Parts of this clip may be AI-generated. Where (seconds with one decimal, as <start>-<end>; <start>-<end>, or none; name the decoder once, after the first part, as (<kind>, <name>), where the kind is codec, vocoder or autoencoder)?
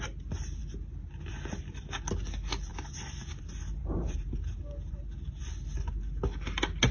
3.8-5.0 (vocoder, BigVGAN v2)